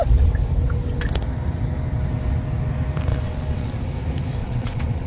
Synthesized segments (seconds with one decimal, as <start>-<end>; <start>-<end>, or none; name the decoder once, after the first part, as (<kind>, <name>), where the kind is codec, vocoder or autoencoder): 3.1-3.7 (vocoder, WaveNeXt); 4.4-5.1